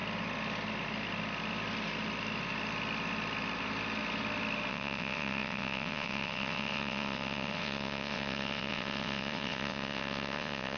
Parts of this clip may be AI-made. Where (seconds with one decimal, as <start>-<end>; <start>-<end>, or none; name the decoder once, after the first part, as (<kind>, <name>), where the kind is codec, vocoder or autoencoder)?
4.7-10.8 (vocoder, WaveNeXt)